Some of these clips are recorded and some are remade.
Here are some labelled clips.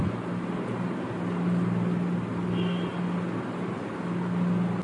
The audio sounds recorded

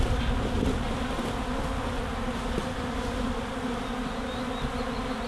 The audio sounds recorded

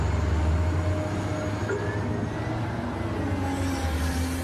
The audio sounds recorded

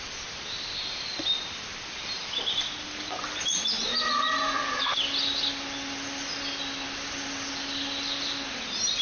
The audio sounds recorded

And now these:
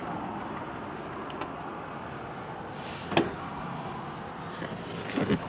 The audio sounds recorded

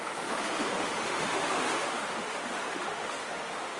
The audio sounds remade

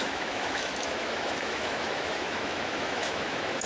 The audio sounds remade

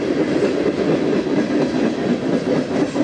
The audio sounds recorded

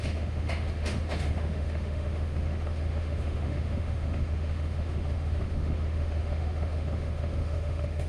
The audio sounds remade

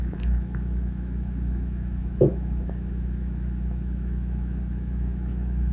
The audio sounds remade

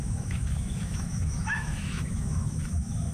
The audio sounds remade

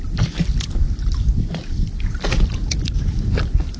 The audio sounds recorded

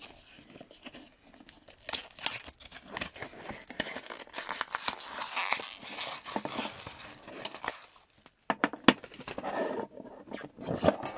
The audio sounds recorded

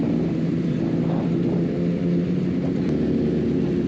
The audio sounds recorded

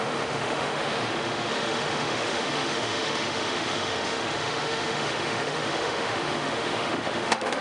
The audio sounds remade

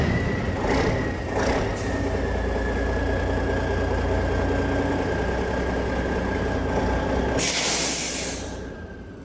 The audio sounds recorded